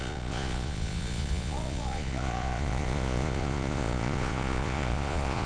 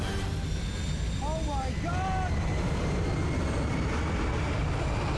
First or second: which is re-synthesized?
first